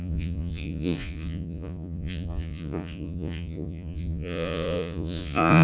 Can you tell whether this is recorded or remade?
remade